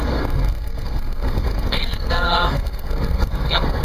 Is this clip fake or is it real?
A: fake